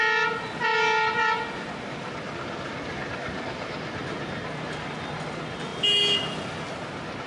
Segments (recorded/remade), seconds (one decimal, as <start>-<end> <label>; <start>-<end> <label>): 0.0-7.3 recorded

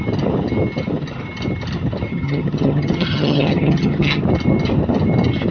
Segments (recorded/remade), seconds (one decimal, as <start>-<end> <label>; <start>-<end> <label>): 0.0-2.1 recorded; 2.1-4.2 remade; 4.2-5.5 recorded

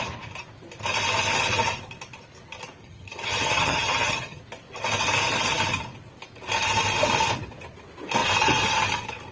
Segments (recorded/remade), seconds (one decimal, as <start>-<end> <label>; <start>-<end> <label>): 0.0-2.8 recorded; 2.8-4.4 remade; 4.4-9.3 recorded